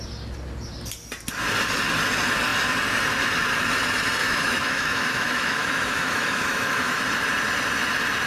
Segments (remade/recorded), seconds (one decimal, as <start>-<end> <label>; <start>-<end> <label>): 0.0-4.2 recorded; 4.2-7.0 remade; 7.0-8.3 recorded